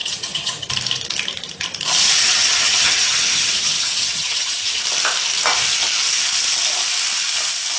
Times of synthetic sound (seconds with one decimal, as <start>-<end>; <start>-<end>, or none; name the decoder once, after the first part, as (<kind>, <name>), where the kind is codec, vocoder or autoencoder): 0.0-0.7 (vocoder, HiFi-GAN); 2.2-4.8